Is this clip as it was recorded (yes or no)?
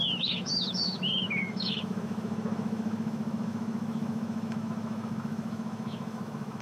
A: no